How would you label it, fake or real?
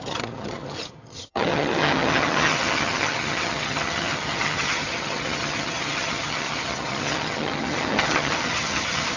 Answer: fake